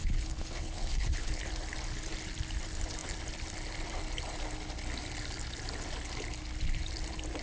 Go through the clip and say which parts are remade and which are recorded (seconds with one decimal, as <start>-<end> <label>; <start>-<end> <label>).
0.0-1.4 remade; 1.4-7.4 recorded